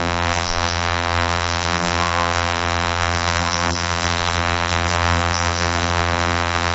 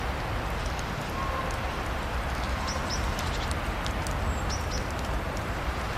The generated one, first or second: first